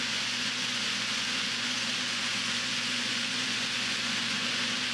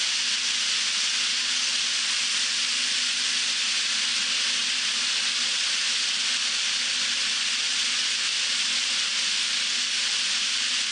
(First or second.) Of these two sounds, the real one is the second